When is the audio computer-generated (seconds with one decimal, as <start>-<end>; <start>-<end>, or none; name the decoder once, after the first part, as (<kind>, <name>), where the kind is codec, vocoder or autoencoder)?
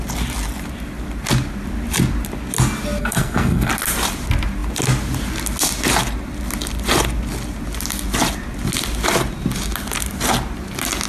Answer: 3.0-3.7 (codec, SNAC)